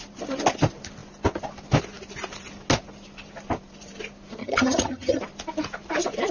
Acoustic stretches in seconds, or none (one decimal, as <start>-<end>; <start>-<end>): 0.0-4.4; 5.2-6.3